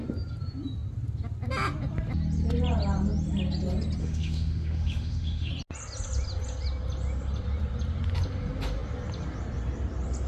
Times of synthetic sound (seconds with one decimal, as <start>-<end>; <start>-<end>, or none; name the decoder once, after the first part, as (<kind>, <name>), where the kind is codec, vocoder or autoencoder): 4.0-5.5 (autoencoder, DAC-VAE)